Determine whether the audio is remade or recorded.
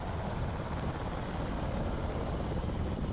recorded